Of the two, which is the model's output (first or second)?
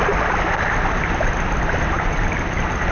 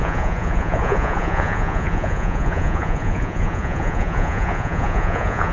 second